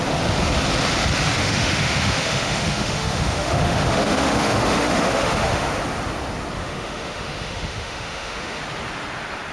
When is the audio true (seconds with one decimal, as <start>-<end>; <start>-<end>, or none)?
0.0-1.4; 5.7-6.6; 8.6-9.5